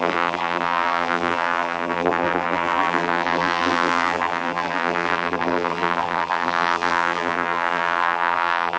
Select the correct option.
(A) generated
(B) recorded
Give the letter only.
A